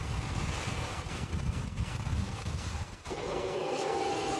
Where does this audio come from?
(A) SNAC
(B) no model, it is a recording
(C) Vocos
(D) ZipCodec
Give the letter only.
A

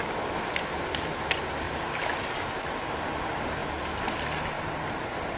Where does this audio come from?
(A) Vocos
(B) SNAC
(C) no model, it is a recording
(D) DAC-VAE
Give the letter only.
C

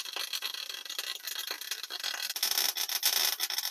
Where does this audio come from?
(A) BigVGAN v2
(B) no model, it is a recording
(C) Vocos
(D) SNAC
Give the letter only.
B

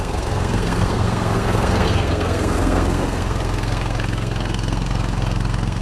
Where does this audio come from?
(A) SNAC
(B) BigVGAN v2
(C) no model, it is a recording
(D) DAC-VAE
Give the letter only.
A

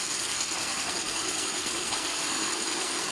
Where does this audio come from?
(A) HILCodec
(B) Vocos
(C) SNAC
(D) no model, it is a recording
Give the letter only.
C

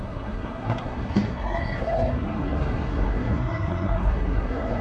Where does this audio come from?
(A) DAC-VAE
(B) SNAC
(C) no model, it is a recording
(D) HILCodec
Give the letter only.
B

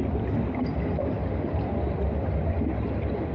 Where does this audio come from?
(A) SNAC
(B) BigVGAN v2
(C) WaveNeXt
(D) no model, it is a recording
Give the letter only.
D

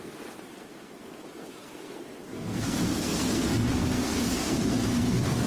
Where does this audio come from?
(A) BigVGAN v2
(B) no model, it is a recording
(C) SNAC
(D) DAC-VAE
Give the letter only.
C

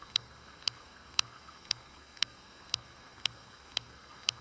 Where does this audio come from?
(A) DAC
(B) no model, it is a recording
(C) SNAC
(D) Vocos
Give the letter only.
C